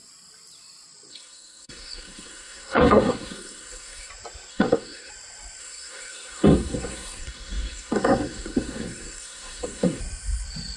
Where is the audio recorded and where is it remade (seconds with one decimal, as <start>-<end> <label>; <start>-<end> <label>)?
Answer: 0.0-1.1 recorded; 1.1-4.1 remade; 4.1-4.5 recorded; 4.5-5.1 remade; 5.1-5.6 recorded; 5.6-10.0 remade; 10.0-10.8 recorded